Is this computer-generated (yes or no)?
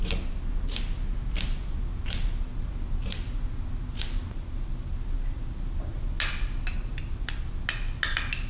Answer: no